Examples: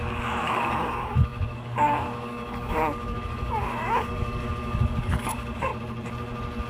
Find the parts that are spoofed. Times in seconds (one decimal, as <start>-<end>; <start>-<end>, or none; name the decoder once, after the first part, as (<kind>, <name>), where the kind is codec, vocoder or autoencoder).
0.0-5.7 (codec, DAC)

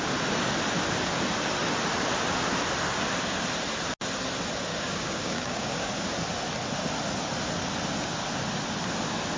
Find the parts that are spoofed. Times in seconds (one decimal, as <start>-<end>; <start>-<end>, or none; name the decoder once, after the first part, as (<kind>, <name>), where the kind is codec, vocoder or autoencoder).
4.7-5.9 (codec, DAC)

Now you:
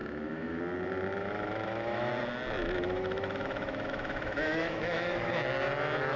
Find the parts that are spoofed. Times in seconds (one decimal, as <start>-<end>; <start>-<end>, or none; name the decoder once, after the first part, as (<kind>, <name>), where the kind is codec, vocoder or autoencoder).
0.0-0.6 (autoencoder, DAC-VAE); 1.1-2.1; 2.6-5.3